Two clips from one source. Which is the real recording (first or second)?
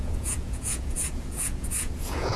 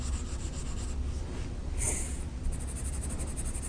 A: second